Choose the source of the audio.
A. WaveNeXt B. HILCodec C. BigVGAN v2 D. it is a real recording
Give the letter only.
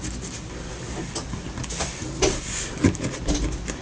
D